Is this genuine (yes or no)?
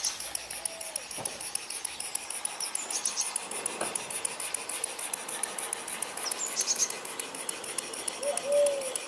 yes